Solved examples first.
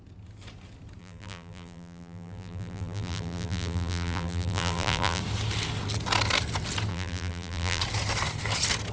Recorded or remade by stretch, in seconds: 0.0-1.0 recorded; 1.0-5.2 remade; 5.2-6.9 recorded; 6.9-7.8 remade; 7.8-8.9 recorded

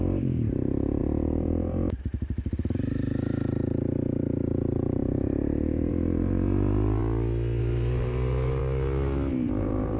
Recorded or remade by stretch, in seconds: 0.0-7.0 remade; 7.0-7.6 recorded; 7.6-8.6 remade; 8.6-9.6 recorded; 9.6-10.0 remade

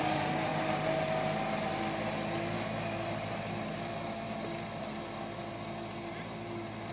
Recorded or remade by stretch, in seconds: 0.0-6.9 recorded

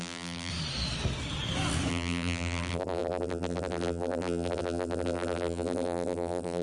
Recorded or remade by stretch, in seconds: 0.0-0.5 remade; 0.5-1.9 recorded; 1.9-6.6 remade